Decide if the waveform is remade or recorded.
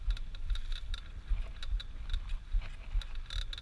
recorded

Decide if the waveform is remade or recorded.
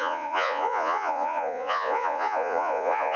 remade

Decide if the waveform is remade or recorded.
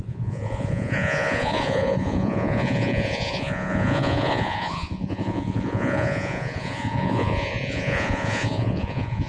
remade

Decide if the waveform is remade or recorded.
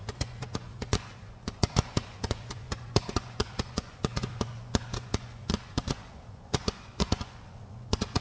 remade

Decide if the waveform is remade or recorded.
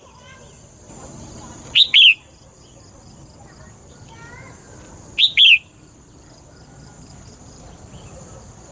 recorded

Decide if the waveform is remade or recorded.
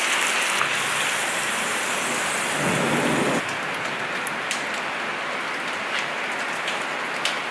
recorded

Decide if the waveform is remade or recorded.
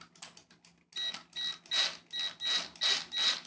recorded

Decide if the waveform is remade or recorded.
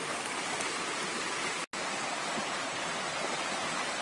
recorded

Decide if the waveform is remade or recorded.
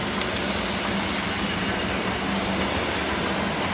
recorded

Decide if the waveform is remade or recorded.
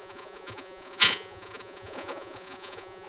remade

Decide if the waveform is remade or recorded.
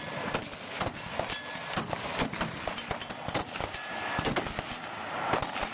recorded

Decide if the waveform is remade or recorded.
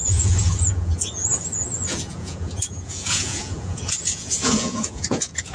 remade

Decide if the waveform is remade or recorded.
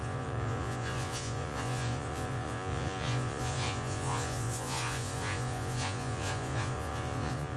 remade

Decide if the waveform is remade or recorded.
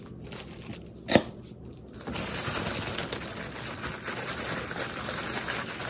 recorded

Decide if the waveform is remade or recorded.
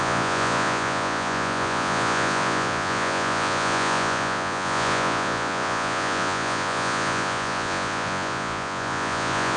remade